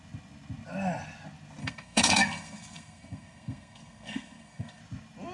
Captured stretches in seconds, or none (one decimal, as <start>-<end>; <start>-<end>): 0.0-1.6; 4.8-5.3